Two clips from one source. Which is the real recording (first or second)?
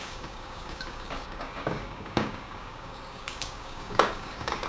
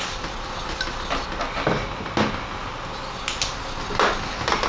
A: second